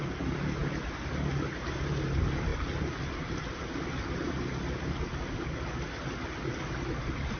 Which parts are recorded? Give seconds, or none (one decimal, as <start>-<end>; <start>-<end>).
0.0-7.4